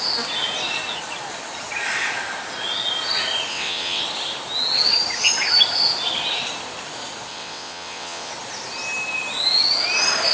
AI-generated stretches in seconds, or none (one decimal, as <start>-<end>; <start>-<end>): 3.5-4.0; 7.3-8.3